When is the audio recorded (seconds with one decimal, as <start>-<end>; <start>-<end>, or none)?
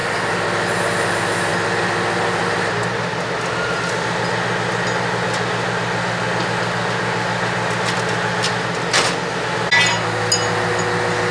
0.0-11.3